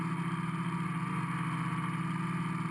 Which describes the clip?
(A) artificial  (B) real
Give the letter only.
B